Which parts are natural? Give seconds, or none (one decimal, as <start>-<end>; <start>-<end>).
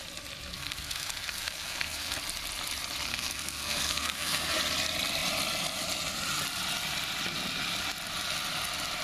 0.0-0.5; 2.2-3.1; 4.5-9.0